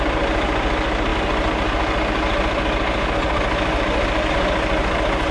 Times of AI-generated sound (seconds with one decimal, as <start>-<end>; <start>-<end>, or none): none